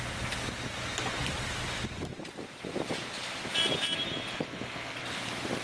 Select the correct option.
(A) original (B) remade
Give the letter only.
A